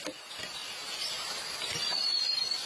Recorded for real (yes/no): no